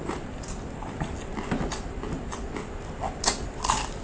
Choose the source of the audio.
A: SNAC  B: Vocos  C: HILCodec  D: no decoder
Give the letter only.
D